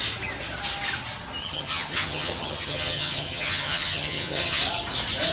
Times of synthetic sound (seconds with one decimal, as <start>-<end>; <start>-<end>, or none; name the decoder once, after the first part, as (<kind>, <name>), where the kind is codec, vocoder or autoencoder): 1.4-4.6 (vocoder, HiFi-GAN)